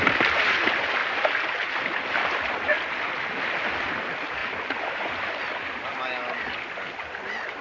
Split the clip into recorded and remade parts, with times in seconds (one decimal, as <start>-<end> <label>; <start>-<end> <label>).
0.0-7.6 recorded